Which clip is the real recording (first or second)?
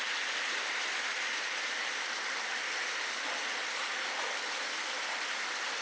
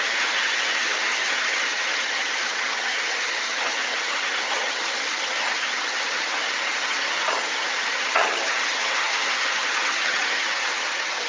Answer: first